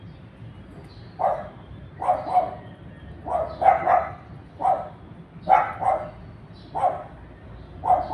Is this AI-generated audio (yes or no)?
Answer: no